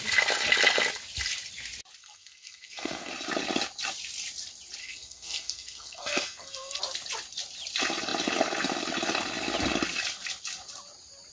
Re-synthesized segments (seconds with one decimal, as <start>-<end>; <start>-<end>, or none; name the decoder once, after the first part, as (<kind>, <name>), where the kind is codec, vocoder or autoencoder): 2.0-3.1 (codec, SNAC); 4.8-6.8